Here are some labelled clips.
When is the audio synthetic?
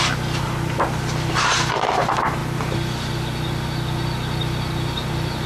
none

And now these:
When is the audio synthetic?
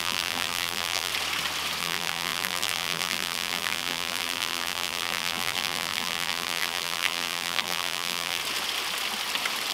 0.0-1.1 (vocoder, BigVGAN v2); 1.8-8.4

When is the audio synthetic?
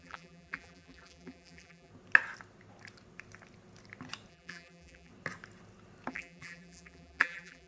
0.0-1.9 (vocoder, BigVGAN v2); 4.3-5.1; 6.1-7.7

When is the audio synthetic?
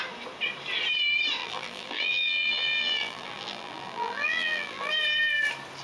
1.4-4.9 (vocoder, BigVGAN v2)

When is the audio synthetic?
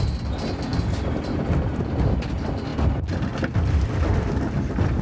none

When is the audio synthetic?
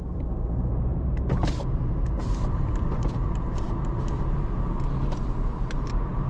0.9-3.7 (vocoder, BigVGAN v2)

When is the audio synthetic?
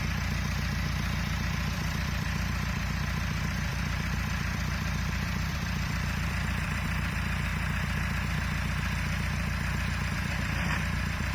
0.0-7.5 (vocoder, BigVGAN v2); 10.1-11.3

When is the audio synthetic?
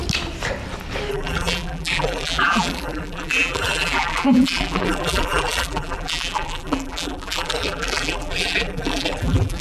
1.1-9.6 (vocoder, BigVGAN v2)